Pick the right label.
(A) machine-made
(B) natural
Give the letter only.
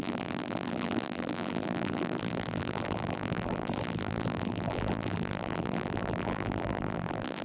A